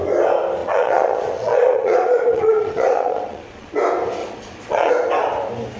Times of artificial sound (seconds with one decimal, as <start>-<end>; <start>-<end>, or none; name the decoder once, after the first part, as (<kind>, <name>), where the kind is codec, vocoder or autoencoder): 0.6-3.7 (vocoder, Vocos); 4.2-4.9